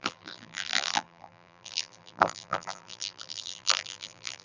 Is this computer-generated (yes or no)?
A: yes